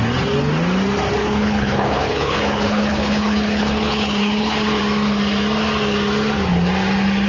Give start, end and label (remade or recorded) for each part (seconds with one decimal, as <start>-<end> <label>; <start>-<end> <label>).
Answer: 0.0-1.2 recorded; 1.2-4.8 remade; 4.8-7.3 recorded